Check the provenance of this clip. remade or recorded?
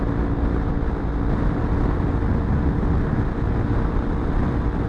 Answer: recorded